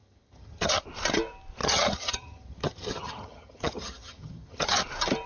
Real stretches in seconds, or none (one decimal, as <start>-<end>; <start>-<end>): 0.8-1.6; 4.8-5.3

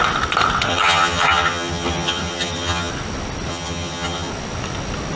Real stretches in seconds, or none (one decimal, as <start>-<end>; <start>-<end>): 0.0-0.7; 2.9-3.5; 4.3-5.2

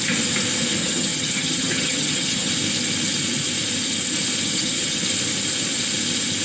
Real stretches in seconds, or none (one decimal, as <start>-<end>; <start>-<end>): 0.0-0.8; 2.5-4.5; 5.0-6.4

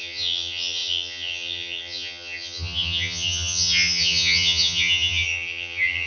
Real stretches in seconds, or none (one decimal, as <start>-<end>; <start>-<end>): none

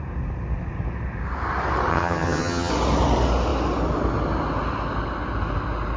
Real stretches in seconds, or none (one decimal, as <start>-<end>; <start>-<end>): 0.0-1.9; 2.7-6.0